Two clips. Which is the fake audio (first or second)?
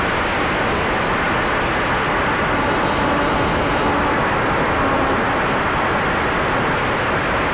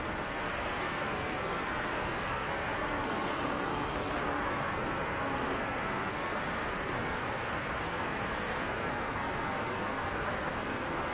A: second